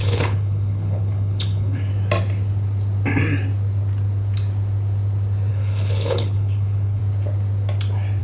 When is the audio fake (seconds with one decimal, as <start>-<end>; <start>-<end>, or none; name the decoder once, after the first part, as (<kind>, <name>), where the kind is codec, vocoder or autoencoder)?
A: 0.0-1.9 (codec, HILCodec); 5.5-7.0